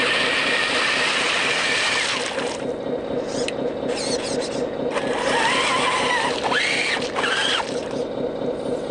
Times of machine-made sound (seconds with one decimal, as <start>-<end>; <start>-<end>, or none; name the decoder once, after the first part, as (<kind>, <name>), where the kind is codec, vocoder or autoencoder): none